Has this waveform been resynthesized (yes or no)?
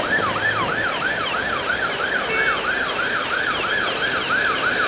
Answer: no